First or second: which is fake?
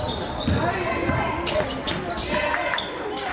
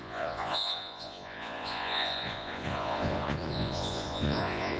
second